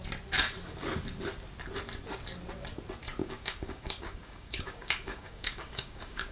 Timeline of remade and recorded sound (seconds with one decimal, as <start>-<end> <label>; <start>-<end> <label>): 0.0-3.2 recorded; 3.2-6.3 remade